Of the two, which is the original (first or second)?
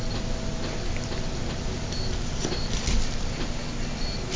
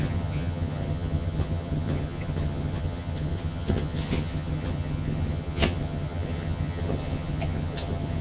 first